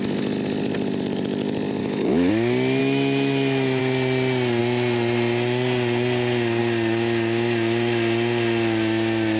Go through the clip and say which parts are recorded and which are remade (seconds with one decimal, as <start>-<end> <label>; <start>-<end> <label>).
0.0-1.8 recorded; 1.8-2.3 remade; 2.3-2.8 recorded; 2.8-3.8 remade; 3.8-9.4 recorded